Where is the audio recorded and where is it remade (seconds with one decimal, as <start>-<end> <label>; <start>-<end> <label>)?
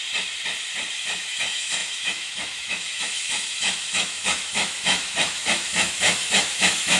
0.0-1.0 recorded; 1.0-7.0 remade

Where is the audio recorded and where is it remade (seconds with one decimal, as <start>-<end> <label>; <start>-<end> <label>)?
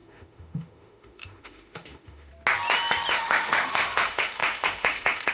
0.0-2.3 remade; 2.3-3.1 recorded; 3.1-5.3 remade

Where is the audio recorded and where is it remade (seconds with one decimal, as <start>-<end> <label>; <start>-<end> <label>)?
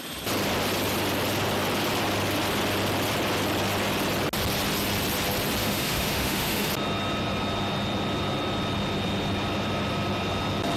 0.0-5.6 recorded; 5.6-6.7 remade; 6.7-10.8 recorded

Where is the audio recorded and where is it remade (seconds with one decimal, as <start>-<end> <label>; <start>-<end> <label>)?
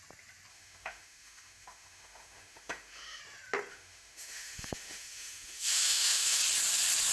0.0-0.5 recorded; 0.5-3.2 remade; 3.2-3.7 recorded; 3.7-6.4 remade; 6.4-7.1 recorded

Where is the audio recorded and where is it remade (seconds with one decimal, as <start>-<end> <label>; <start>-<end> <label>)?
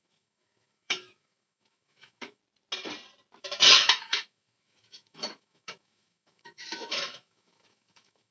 0.0-2.4 remade; 2.4-3.4 recorded; 3.4-8.3 remade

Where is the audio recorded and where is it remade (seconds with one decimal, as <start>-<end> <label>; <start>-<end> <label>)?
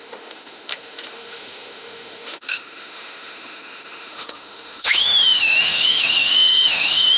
0.0-7.2 remade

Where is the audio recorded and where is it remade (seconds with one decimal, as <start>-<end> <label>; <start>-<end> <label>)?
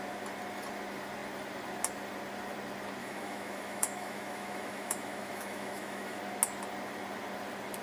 0.0-3.0 recorded; 3.0-6.2 remade; 6.2-7.8 recorded